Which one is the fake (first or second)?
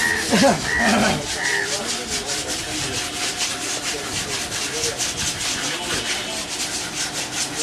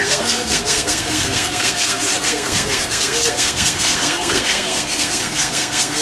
second